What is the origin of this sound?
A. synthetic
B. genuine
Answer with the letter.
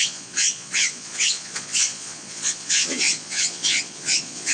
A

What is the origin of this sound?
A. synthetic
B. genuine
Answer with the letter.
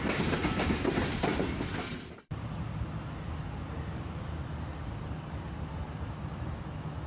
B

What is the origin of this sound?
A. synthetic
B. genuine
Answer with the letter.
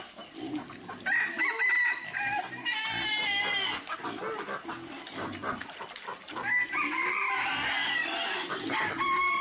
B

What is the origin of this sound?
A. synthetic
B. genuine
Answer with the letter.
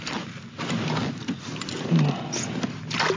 B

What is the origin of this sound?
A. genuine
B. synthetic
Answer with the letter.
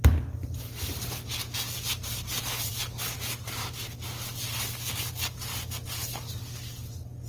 A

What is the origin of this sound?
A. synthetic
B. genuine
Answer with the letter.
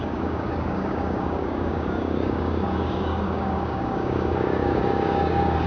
A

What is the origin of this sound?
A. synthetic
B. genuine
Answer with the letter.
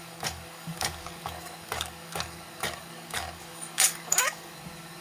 A